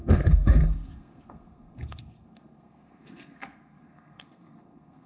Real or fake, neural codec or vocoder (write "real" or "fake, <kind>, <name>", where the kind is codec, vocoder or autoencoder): fake, codec, SNAC